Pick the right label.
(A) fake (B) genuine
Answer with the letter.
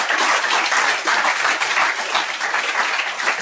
B